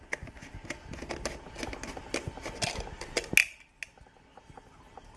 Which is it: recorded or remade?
recorded